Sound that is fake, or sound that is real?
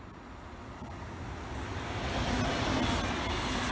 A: real